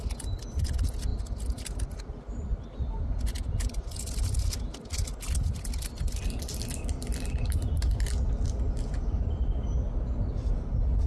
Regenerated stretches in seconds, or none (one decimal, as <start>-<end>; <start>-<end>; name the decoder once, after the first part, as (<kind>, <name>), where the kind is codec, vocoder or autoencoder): 5.1-5.8 (vocoder, BigVGAN v2)